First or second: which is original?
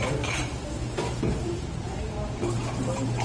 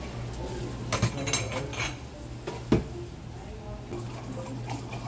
second